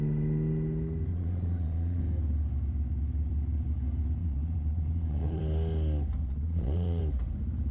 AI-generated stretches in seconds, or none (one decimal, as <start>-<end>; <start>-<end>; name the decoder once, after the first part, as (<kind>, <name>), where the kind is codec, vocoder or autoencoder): 1.1-2.0 (vocoder, Vocos); 4.2-5.4; 6.2-7.0